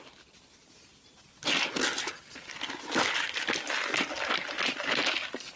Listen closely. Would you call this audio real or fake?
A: real